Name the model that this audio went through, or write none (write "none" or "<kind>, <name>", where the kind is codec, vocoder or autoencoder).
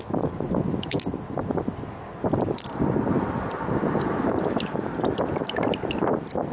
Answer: none